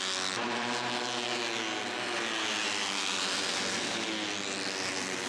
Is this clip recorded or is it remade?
recorded